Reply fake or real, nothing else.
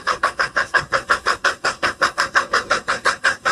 fake